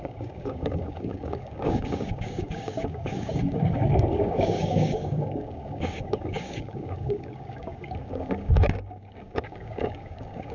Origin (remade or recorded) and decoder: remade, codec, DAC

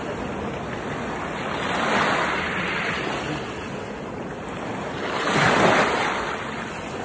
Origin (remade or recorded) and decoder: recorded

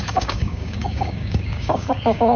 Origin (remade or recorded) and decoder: remade, codec, DAC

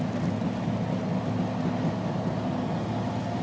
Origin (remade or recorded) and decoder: recorded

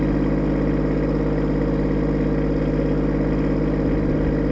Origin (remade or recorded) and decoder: recorded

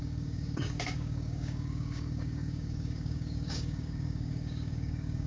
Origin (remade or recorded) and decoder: remade, codec, DAC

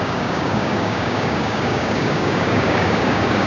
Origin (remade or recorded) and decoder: remade, codec, DAC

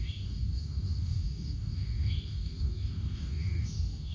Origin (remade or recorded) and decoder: remade, codec, DAC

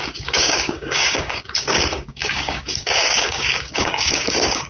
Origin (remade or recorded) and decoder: remade, codec, DAC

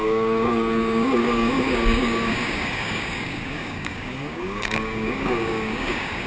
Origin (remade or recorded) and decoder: remade, codec, DAC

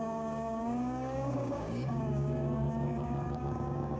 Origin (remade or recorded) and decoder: remade, codec, DAC